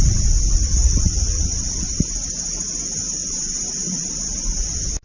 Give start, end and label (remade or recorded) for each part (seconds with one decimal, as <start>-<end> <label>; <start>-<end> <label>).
0.0-0.7 recorded; 0.7-2.0 remade; 2.0-3.2 recorded; 3.2-4.1 remade; 4.1-5.0 recorded